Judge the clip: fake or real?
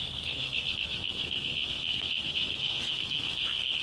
fake